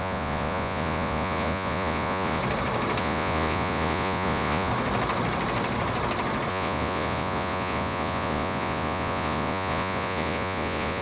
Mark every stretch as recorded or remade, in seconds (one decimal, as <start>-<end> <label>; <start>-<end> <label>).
0.0-2.4 remade; 2.4-3.0 recorded; 3.0-4.7 remade; 4.7-6.5 recorded; 6.5-11.0 remade